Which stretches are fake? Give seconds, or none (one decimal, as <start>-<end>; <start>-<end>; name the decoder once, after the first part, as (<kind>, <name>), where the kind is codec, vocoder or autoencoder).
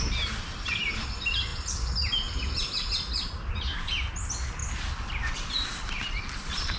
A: none